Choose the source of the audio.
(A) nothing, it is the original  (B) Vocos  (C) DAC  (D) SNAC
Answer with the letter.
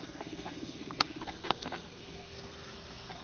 D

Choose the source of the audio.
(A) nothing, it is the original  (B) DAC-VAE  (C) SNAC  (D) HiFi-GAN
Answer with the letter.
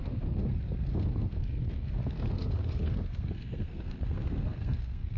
C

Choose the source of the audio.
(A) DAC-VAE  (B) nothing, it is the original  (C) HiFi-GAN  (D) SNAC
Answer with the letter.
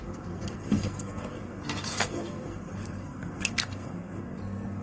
D